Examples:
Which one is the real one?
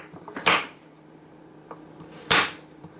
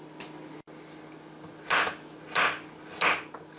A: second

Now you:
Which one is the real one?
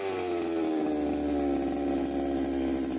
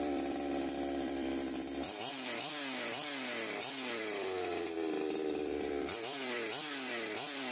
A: first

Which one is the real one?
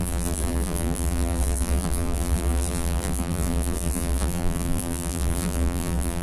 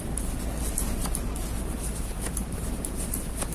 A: second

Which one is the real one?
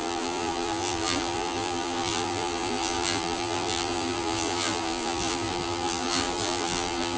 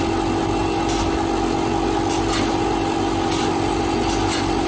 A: second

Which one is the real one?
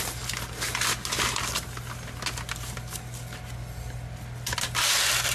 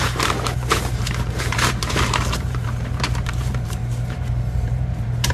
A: first